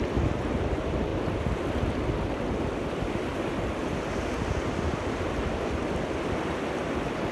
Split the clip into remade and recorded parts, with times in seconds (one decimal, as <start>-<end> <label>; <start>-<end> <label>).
0.0-1.1 remade; 1.1-2.7 recorded; 2.7-3.3 remade; 3.3-7.3 recorded